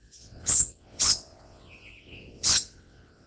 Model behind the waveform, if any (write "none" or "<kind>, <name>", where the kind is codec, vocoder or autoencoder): vocoder, WaveNeXt